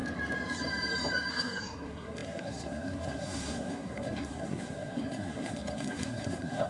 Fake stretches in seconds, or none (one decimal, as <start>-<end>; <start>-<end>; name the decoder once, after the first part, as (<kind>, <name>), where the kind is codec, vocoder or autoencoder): 1.3-6.7 (codec, SNAC)